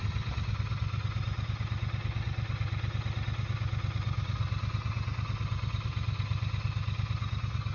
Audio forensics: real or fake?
real